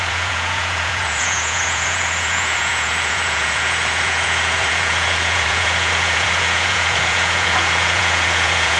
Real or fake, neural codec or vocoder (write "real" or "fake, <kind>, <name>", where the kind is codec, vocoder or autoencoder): fake, vocoder, Vocos